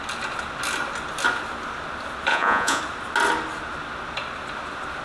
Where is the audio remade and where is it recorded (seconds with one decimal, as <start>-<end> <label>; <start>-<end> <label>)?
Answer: 0.0-2.3 recorded; 2.3-2.8 remade; 2.8-5.0 recorded